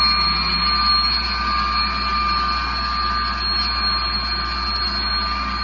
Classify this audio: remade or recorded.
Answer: recorded